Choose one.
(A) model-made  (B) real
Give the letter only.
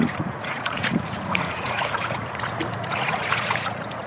A